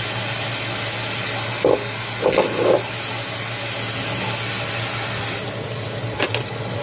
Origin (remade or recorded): recorded